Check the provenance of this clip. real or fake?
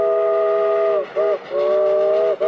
real